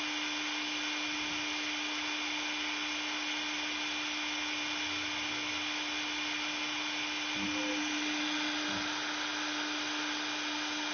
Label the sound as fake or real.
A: real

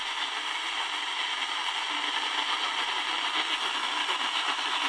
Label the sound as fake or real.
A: real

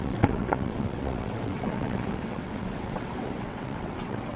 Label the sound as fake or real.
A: fake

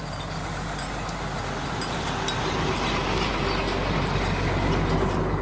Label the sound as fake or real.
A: real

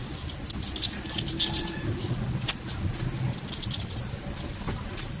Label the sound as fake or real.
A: real